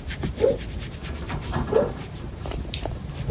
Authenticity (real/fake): fake